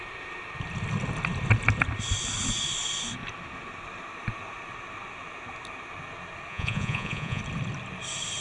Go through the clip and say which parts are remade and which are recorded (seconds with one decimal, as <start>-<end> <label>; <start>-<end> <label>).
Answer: 0.0-6.5 recorded; 6.5-7.4 remade; 7.4-8.4 recorded